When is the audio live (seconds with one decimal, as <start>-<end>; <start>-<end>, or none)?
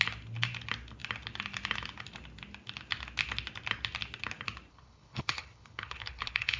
0.0-4.7